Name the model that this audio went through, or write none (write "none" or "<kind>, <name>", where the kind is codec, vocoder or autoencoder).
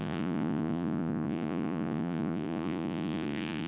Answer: vocoder, Vocos